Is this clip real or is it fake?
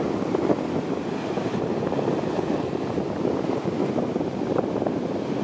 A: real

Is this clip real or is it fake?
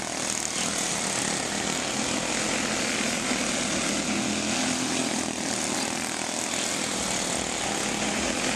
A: real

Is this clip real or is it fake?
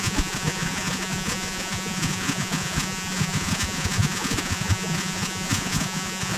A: fake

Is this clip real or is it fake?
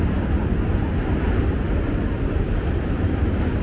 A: real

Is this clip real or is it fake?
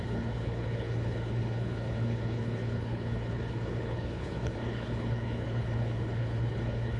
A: fake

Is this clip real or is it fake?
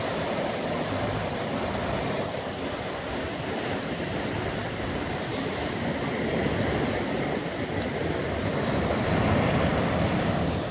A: real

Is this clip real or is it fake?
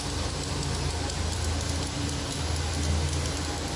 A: real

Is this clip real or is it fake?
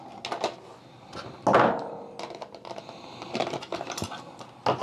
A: real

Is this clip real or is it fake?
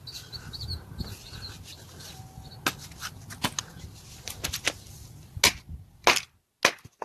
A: real